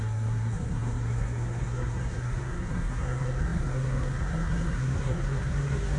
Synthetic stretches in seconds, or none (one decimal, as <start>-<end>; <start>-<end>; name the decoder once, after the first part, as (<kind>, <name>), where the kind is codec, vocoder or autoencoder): 0.0-6.0 (codec, SNAC)